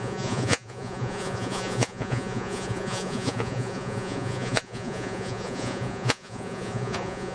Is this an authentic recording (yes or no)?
no